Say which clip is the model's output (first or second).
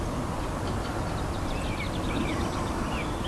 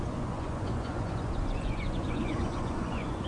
second